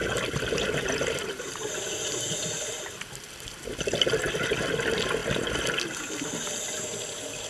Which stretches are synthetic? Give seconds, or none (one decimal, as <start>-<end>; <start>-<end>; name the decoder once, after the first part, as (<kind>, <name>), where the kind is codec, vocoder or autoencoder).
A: 0.0-1.7 (vocoder, BigVGAN v2); 5.2-6.6